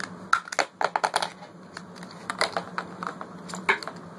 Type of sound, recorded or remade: recorded